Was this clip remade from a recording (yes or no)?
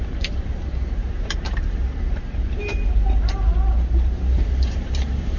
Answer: yes